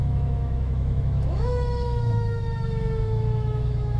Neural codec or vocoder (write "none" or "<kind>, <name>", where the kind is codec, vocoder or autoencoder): autoencoder, DAC-VAE